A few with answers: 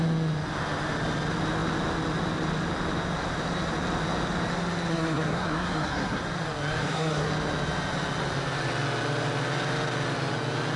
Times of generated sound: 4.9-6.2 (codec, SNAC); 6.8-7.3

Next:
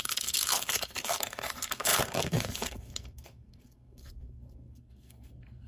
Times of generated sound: 0.0-5.7 (codec, SNAC)

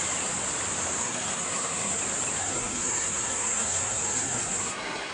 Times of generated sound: 1.0-2.0 (codec, SNAC); 2.4-5.1

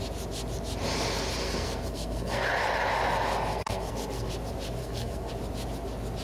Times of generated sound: 1.4-2.5 (codec, SNAC); 3.5-4.3; 4.8-5.3

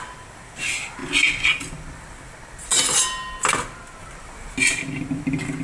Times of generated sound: none

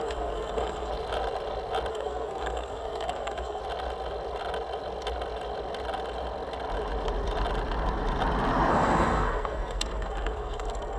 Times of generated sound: 0.0-0.9 (codec, SNAC); 1.9-3.6; 8.7-11.0

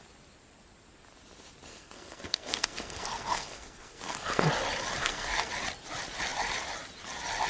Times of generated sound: 1.7-4.5 (codec, SNAC); 5.0-5.5

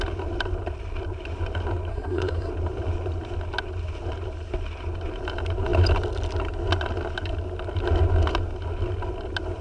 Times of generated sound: 1.9-2.5 (codec, SNAC)